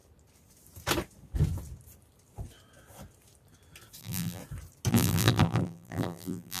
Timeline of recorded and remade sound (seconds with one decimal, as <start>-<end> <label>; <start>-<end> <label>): 0.0-4.0 recorded; 4.0-4.4 remade; 4.4-4.9 recorded; 4.9-6.6 remade